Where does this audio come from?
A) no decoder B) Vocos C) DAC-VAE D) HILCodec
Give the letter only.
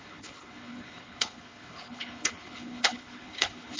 D